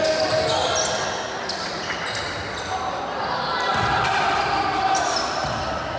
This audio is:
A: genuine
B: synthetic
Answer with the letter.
A